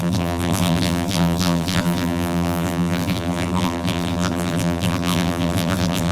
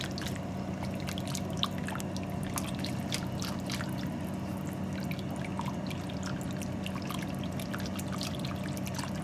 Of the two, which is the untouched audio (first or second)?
second